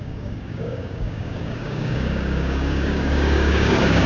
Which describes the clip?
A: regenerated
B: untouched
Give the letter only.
A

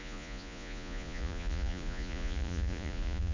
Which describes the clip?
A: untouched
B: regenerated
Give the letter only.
B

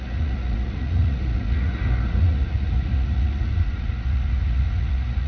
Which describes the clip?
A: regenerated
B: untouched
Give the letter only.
A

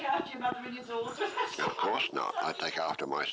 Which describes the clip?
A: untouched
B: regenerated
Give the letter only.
A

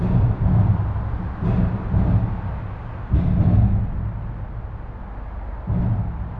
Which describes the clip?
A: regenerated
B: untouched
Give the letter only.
B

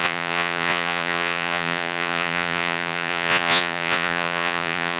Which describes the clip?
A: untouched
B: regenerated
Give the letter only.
B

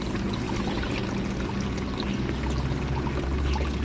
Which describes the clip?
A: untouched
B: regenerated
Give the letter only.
A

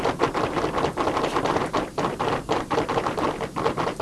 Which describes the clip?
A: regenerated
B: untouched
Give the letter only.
B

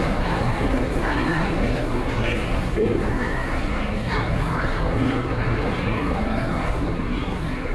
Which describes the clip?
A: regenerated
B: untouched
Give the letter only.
A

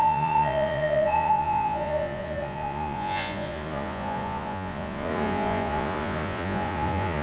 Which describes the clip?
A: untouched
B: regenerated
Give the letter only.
B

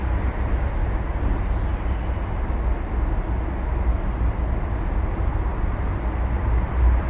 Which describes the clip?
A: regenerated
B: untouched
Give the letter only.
B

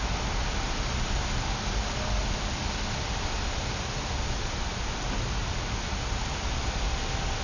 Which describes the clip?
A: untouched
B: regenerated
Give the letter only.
A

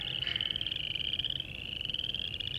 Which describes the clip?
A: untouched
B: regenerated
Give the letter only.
A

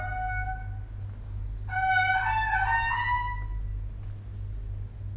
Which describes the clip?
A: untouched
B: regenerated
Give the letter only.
A